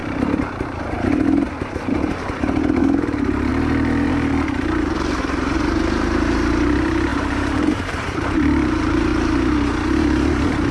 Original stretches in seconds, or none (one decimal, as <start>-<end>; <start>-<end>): 4.3-5.2; 9.1-10.7